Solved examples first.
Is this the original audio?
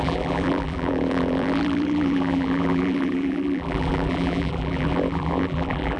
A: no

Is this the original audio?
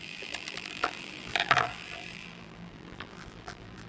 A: no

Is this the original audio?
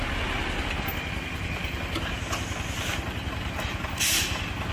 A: yes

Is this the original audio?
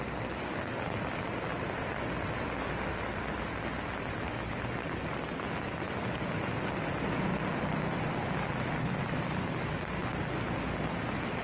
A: yes